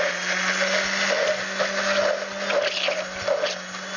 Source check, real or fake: real